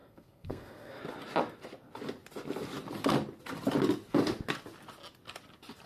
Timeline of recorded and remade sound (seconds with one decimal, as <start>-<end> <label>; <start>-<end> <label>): 0.0-1.0 remade; 1.0-5.9 recorded